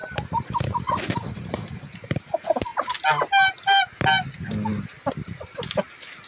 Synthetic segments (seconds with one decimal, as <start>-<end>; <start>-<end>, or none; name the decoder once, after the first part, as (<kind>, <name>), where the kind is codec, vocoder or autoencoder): 0.0-2.2 (vocoder, BigVGAN v2); 4.7-5.8